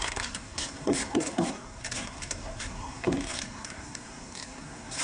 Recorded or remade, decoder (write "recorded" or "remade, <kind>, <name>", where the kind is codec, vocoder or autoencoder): remade, codec, SNAC